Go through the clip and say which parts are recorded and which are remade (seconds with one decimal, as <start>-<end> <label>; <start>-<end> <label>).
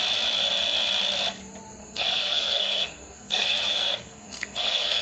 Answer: 0.0-1.8 recorded; 1.8-5.0 remade